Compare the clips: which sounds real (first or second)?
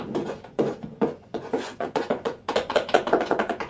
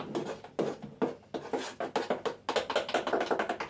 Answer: second